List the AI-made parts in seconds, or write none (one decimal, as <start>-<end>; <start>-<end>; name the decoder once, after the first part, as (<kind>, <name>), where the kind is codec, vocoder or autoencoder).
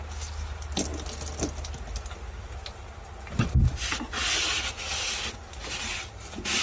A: none